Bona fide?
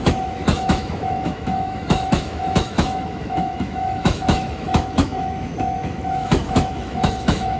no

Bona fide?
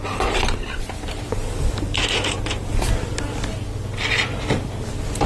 yes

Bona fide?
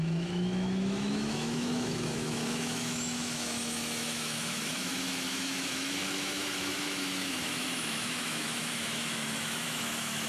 no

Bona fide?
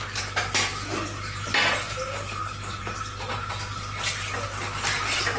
yes